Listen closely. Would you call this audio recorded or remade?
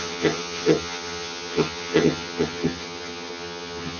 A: remade